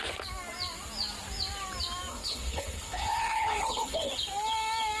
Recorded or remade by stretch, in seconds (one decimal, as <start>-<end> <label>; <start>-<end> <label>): 0.0-2.1 recorded; 2.1-4.1 remade; 4.1-5.0 recorded